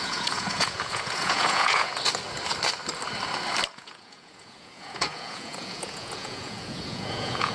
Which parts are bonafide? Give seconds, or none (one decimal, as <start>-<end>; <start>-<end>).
1.9-3.7